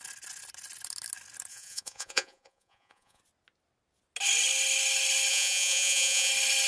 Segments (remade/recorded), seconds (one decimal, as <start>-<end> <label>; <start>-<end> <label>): 0.0-1.5 recorded; 1.5-3.2 remade; 3.2-5.3 recorded; 5.3-6.3 remade; 6.3-6.7 recorded